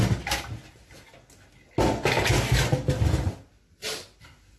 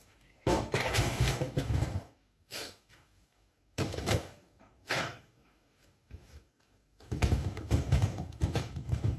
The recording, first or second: first